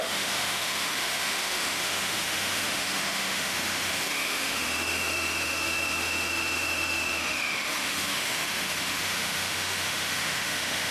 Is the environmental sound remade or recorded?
remade